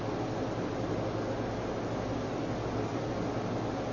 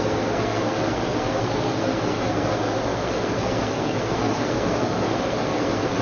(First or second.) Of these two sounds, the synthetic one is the second